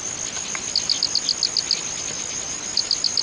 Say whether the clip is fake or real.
real